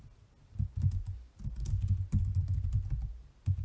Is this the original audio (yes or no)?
yes